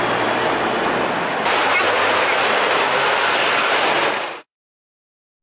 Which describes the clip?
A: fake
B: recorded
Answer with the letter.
B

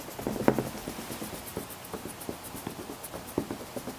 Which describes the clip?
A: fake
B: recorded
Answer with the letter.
B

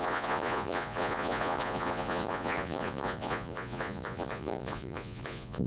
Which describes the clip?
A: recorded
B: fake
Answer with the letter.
B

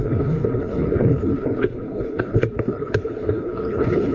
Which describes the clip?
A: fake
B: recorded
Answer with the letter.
A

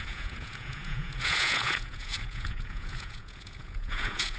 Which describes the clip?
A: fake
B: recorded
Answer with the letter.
A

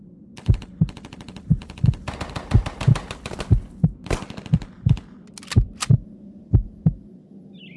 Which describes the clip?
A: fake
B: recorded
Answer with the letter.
B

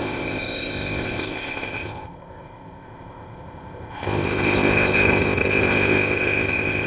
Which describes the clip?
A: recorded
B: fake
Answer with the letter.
B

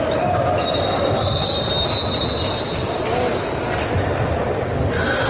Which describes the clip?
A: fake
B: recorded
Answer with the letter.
B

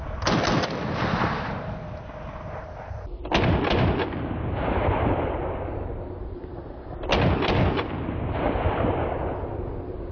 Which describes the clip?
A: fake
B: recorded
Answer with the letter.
B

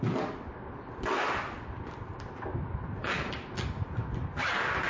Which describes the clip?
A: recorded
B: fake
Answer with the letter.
A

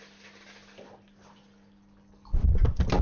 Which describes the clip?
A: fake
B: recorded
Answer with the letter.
B